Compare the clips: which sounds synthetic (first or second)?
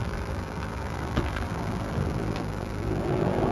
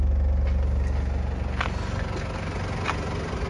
first